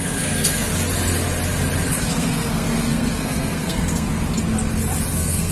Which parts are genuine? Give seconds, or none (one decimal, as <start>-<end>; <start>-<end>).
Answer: 0.7-1.9; 4.1-5.1